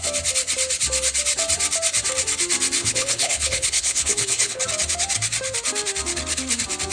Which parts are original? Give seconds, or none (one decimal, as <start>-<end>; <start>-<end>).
0.0-2.8; 4.6-6.9